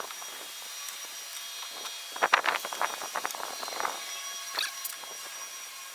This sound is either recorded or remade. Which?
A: recorded